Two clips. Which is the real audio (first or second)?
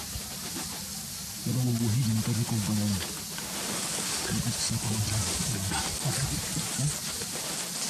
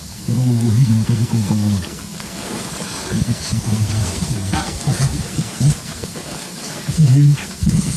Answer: first